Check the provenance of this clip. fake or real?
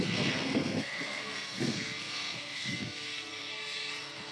fake